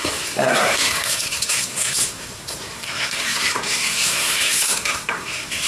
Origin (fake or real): fake